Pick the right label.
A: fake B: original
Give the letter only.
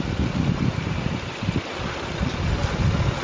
B